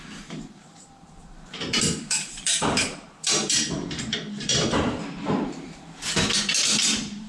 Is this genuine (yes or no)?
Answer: no